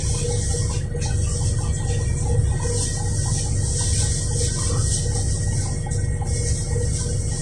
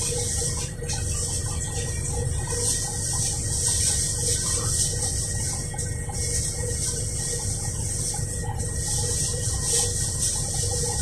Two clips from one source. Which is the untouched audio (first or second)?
first